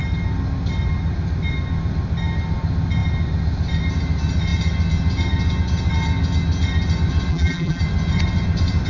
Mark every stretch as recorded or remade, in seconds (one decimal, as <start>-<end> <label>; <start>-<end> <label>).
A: 0.0-7.3 recorded; 7.3-7.8 remade; 7.8-8.9 recorded